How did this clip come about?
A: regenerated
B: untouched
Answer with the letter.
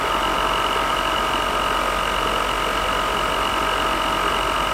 B